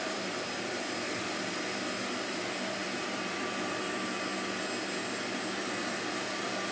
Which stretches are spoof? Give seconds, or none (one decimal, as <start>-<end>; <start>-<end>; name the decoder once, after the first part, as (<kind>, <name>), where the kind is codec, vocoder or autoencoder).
0.0-4.3 (vocoder, BigVGAN v2); 5.4-6.7